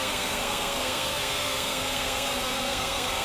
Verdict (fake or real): fake